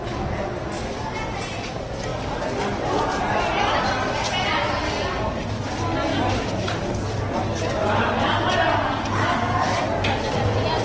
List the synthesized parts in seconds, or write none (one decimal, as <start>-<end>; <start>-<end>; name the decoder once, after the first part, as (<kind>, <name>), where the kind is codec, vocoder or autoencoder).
none